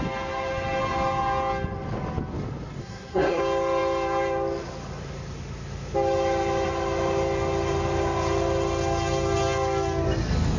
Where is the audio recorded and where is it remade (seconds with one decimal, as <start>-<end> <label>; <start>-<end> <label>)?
0.0-2.8 recorded; 2.8-3.4 remade; 3.4-10.6 recorded